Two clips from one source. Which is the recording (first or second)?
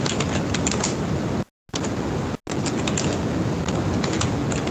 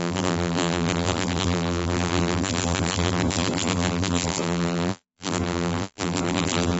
first